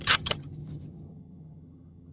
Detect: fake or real fake